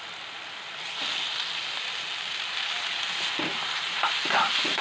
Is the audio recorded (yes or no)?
yes